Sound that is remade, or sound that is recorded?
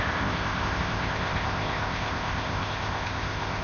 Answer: remade